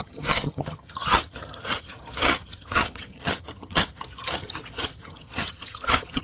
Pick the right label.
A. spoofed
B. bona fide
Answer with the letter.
A